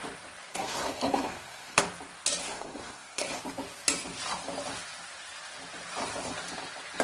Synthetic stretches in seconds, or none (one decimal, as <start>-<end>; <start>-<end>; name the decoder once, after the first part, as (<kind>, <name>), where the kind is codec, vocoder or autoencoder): 0.5-1.8 (codec, SNAC); 2.4-3.4